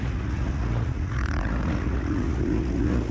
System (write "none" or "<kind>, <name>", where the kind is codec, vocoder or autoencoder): vocoder, Vocos